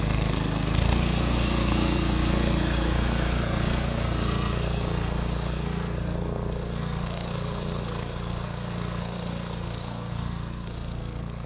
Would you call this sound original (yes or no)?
no